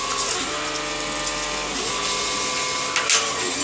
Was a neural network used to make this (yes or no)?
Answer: no